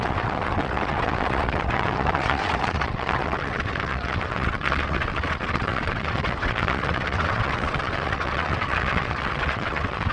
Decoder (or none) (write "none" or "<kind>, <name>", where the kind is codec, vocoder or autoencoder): vocoder, WaveNeXt